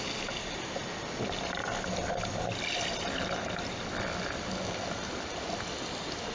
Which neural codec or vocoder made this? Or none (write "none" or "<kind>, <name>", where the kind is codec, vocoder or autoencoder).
none